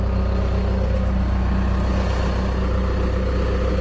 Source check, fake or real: real